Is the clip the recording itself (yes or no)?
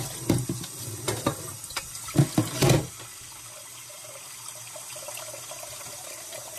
yes